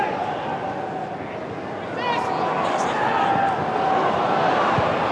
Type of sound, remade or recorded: recorded